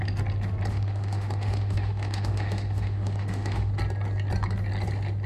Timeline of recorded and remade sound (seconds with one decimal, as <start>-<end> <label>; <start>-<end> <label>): 0.0-0.7 recorded; 0.7-3.7 remade; 3.7-5.3 recorded